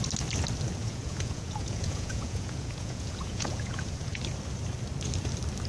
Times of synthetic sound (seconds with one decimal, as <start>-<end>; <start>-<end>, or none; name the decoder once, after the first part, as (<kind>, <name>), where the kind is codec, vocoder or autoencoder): 0.8-4.2 (vocoder, Vocos)